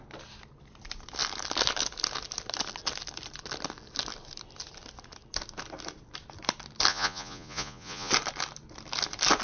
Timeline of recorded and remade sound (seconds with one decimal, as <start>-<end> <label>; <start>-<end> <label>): 0.0-6.9 recorded; 6.9-8.1 remade; 8.1-9.4 recorded